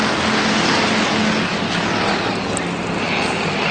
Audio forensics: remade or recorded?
recorded